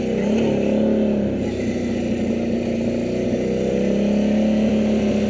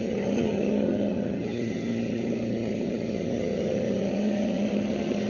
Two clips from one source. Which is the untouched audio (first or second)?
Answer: first